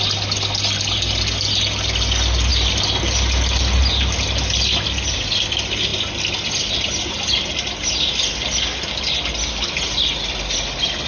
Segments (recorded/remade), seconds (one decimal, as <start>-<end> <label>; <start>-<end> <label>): 0.0-11.1 recorded